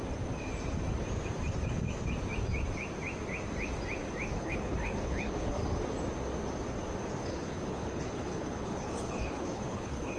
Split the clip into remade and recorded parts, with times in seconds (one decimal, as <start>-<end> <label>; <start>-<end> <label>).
0.0-4.4 recorded; 4.4-5.6 remade; 5.6-7.2 recorded; 7.2-10.2 remade